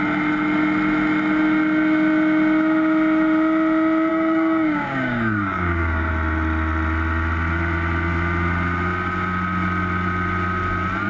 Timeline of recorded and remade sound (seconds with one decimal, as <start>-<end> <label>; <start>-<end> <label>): 0.0-4.1 recorded; 4.1-6.1 remade; 6.1-11.1 recorded